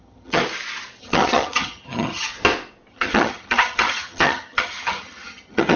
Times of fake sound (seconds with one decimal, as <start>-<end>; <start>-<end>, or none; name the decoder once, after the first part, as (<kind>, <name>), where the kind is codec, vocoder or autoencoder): 0.0-0.4 (vocoder, HiFi-GAN); 1.0-2.3; 2.9-5.8